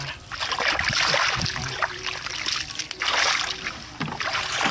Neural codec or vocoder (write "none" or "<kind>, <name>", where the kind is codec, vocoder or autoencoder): none